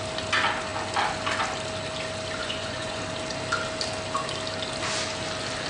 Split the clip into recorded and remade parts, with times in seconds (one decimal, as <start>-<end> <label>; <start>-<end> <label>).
0.0-2.4 recorded; 2.4-3.0 remade; 3.0-5.7 recorded